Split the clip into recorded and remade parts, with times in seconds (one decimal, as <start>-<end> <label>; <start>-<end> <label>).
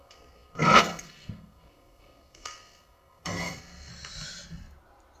0.0-3.9 remade; 3.9-5.2 recorded